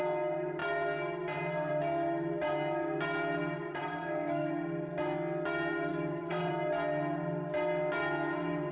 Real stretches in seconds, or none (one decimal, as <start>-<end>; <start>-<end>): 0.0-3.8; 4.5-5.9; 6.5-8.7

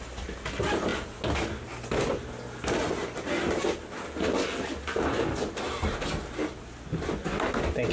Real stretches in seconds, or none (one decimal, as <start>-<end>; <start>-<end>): 0.0-7.9

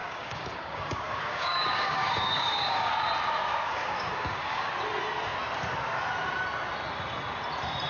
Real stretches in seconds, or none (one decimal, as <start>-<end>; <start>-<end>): 2.9-3.5; 4.7-7.9

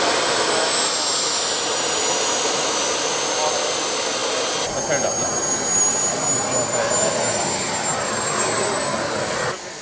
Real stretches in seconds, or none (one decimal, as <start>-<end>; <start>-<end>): 0.0-9.8

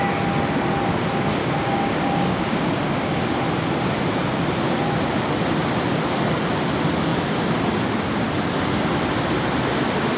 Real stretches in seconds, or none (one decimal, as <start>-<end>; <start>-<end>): 0.0-1.4; 3.2-10.2

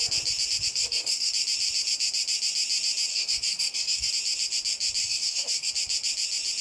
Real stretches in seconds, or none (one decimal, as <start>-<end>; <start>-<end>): 0.0-0.7; 1.3-3.1; 4.1-5.0; 5.7-6.6

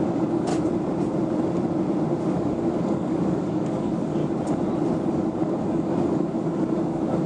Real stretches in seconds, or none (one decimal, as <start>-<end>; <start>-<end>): 0.5-2.1; 4.2-5.1